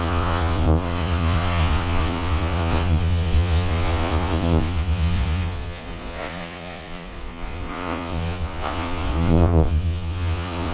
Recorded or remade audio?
remade